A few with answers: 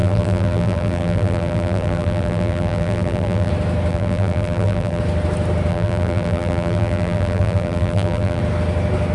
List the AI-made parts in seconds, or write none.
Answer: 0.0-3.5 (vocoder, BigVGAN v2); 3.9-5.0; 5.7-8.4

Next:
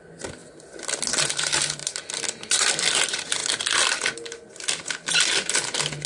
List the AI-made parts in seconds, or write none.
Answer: 1.8-3.0 (vocoder, BigVGAN v2); 3.4-5.1

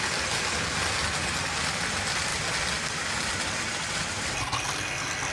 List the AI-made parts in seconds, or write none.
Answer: none

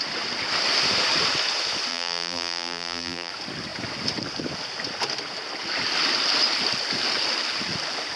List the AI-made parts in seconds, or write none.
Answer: 1.9-3.3 (vocoder, BigVGAN v2)

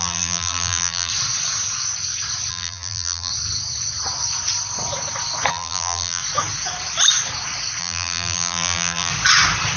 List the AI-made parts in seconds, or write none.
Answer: 0.0-1.1 (vocoder, BigVGAN v2); 2.5-3.3; 5.5-6.2; 7.8-9.1

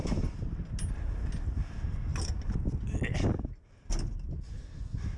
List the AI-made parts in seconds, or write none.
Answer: none

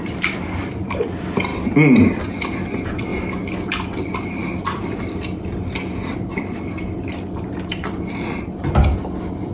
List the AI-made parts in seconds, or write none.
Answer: 0.0-1.5 (vocoder, BigVGAN v2); 2.2-3.1; 3.8-9.5

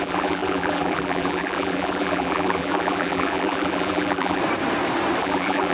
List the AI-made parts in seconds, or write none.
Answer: 0.0-4.4 (vocoder, BigVGAN v2); 5.2-5.7